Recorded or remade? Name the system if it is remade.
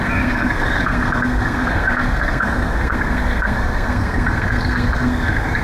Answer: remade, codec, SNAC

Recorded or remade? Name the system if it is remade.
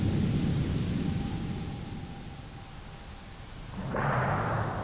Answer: recorded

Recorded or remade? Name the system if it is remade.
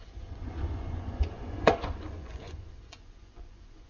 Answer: remade, vocoder, Vocos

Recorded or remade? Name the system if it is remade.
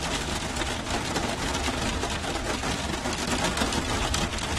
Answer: recorded